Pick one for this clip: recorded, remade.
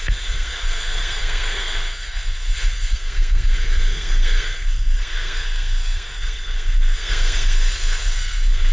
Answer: remade